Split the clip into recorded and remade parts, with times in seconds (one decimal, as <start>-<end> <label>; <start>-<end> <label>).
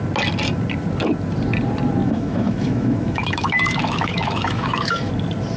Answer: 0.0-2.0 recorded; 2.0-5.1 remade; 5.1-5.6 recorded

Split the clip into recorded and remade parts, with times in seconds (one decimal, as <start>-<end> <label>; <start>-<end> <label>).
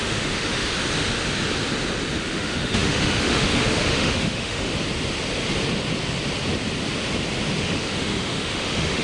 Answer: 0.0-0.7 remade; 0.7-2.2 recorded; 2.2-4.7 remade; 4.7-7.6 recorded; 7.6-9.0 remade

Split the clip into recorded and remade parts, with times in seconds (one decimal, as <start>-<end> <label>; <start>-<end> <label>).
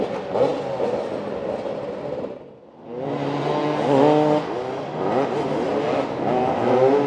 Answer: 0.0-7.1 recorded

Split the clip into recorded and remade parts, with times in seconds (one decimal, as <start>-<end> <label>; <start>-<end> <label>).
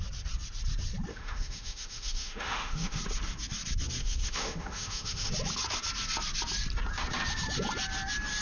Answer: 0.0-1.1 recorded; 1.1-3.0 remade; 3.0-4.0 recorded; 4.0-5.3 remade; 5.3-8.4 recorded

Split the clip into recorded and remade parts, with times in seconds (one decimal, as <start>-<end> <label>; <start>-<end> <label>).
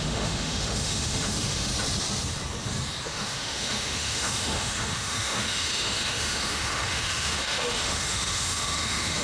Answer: 0.0-1.7 remade; 1.7-3.1 recorded; 3.1-9.2 remade